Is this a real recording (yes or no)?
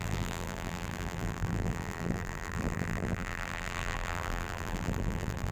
no